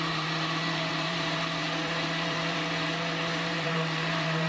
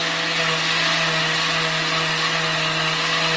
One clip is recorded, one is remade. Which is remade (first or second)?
first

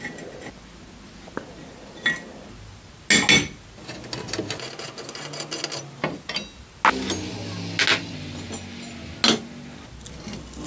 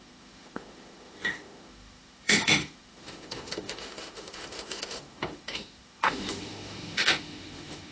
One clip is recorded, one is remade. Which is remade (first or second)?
second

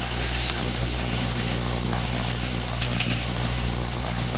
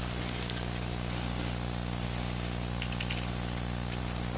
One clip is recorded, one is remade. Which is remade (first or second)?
first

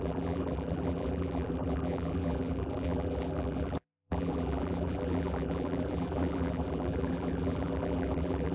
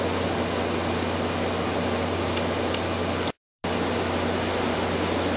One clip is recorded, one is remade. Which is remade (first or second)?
first